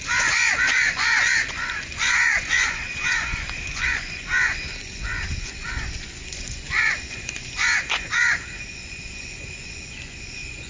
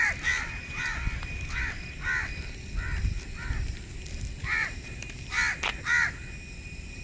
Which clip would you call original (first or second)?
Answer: second